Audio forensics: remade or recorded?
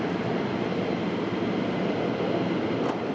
recorded